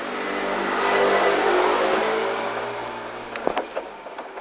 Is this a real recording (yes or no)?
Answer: yes